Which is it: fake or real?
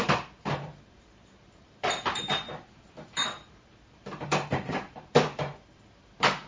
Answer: fake